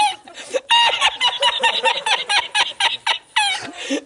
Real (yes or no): yes